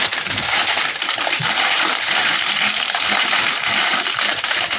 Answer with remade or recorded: remade